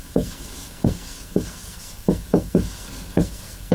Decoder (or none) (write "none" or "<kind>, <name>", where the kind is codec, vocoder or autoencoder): codec, SNAC